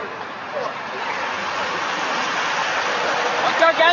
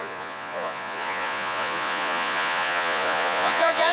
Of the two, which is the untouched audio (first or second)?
first